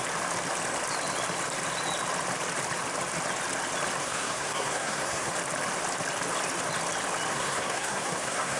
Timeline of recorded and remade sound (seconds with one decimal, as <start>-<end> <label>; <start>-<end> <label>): 0.0-4.0 recorded; 4.0-5.3 remade; 5.3-7.3 recorded; 7.3-8.6 remade